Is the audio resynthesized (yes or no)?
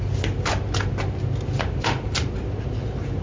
no